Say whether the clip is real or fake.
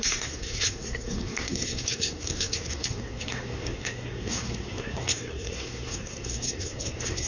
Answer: fake